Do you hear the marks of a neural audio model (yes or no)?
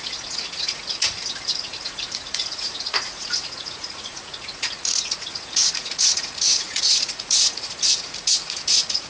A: yes